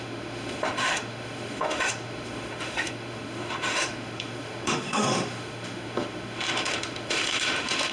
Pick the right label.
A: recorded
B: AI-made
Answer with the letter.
B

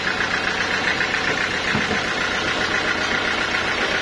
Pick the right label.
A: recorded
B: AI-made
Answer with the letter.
A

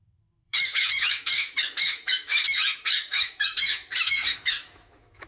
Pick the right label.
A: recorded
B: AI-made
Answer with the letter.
B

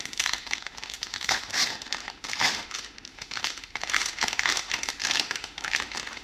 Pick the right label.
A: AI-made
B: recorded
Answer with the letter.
A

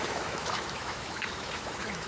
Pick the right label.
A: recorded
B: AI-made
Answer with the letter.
B